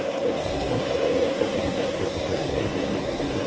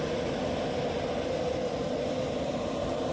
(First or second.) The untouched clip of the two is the second